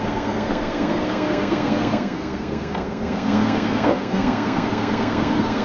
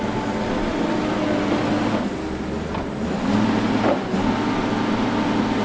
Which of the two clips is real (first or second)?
second